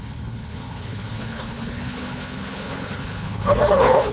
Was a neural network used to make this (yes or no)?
yes